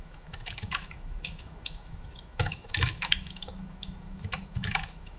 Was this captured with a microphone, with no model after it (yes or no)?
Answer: no